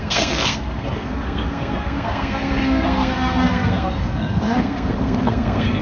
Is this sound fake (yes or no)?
yes